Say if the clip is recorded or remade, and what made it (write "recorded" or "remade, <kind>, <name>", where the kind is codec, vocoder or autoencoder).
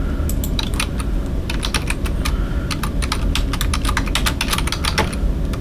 recorded